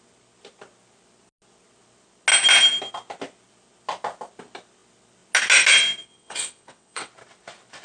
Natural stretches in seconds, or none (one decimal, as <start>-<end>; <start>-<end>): 0.0-6.0; 7.1-7.8